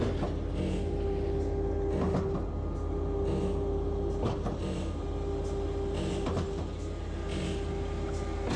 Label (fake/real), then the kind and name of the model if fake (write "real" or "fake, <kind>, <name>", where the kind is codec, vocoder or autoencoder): real